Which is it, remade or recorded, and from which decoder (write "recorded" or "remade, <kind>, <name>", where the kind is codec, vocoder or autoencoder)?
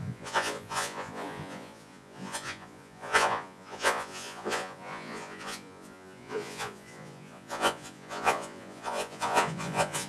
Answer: remade, vocoder, Vocos